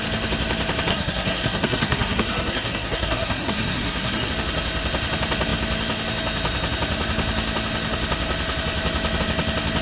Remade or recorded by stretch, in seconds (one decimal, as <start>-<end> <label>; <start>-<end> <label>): 0.0-0.9 recorded; 0.9-4.3 remade; 4.3-9.8 recorded